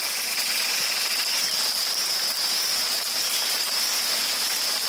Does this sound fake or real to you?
fake